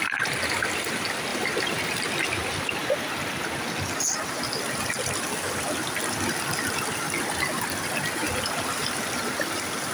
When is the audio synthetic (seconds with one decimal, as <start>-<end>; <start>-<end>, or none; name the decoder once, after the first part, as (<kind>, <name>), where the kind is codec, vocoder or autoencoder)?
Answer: 1.3-2.1 (vocoder, BigVGAN v2)